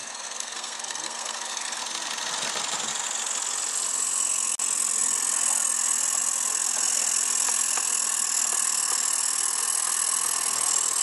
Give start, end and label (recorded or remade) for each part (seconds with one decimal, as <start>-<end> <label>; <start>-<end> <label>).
0.0-1.8 remade; 1.8-11.0 recorded